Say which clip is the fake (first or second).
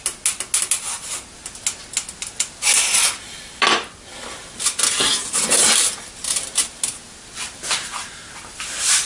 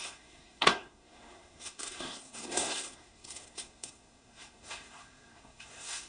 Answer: second